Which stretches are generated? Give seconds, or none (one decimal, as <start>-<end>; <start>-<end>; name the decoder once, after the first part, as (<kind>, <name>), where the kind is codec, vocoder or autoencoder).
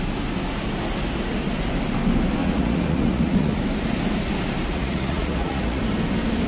2.4-3.6 (vocoder, Vocos); 4.7-5.8